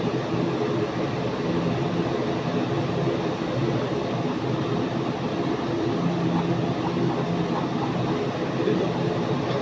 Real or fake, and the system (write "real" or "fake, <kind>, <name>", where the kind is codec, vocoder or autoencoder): real